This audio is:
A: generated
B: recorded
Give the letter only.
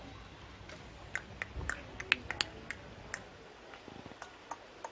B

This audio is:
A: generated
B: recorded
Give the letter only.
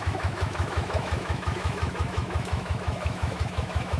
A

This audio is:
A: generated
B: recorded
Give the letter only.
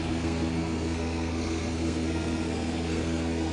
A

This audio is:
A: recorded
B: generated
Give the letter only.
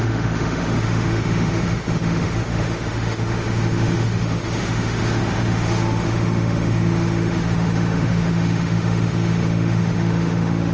B